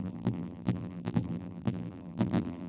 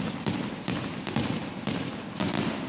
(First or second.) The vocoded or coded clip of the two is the first